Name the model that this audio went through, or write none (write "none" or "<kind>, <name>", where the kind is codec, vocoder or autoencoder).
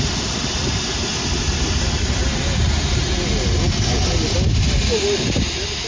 none